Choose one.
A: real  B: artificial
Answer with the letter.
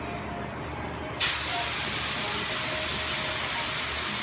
A